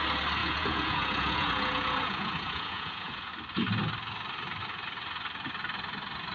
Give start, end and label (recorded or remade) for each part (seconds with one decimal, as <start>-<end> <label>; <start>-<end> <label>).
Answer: 0.0-0.4 recorded; 0.4-3.3 remade; 3.3-6.3 recorded

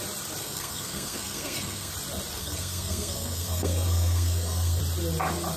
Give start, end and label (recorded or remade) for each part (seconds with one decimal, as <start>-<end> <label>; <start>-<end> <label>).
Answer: 0.0-0.4 recorded; 0.4-1.9 remade; 1.9-2.4 recorded; 2.4-4.8 remade; 4.8-5.6 recorded

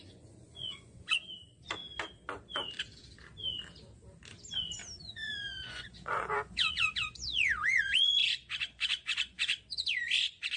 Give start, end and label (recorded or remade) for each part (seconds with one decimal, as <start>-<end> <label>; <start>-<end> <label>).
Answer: 0.0-1.8 remade; 1.8-5.0 recorded; 5.0-10.6 remade

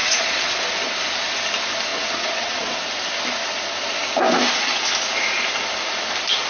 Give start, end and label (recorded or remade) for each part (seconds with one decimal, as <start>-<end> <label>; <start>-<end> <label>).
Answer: 0.0-0.6 remade; 0.6-1.9 recorded; 1.9-2.8 remade; 2.8-6.5 recorded

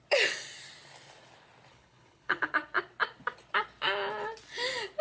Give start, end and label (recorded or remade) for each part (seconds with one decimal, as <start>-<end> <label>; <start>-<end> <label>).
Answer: 0.0-1.7 recorded; 1.7-2.5 remade; 2.5-5.0 recorded

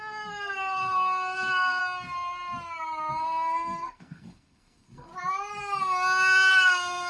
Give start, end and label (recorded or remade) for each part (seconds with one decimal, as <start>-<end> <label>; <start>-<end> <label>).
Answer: 0.0-1.8 remade; 1.8-3.1 recorded; 3.1-5.1 remade; 5.1-6.5 recorded; 6.5-7.1 remade

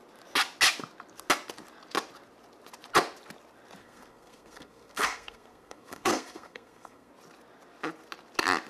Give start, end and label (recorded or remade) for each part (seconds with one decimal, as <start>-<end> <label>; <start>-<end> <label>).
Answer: 0.0-3.8 recorded; 3.8-7.1 remade; 7.1-8.7 recorded

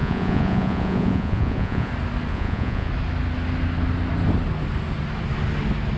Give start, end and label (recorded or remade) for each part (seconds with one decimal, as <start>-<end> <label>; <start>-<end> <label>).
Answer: 0.0-1.9 remade; 1.9-2.3 recorded; 2.3-2.9 remade; 2.9-6.0 recorded